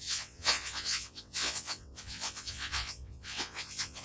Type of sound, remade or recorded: remade